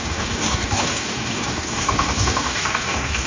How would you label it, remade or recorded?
remade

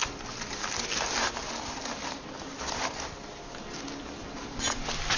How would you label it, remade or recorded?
recorded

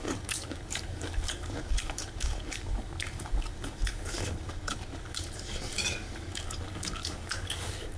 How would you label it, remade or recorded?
remade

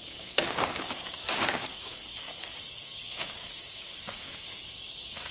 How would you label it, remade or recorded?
remade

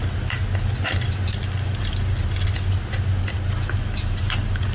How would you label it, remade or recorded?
recorded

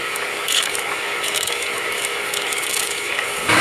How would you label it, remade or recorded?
remade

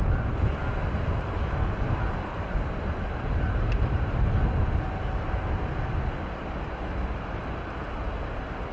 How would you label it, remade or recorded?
recorded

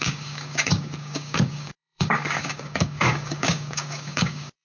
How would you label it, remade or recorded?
remade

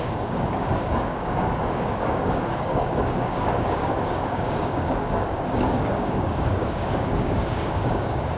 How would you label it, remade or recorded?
remade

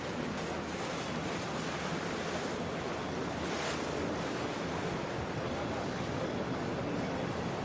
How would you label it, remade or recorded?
recorded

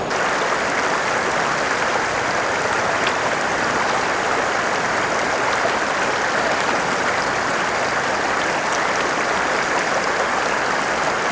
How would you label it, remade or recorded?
recorded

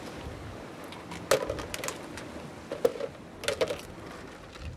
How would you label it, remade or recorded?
recorded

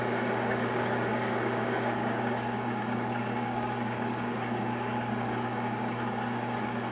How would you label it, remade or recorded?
remade